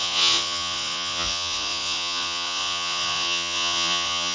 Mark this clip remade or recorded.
remade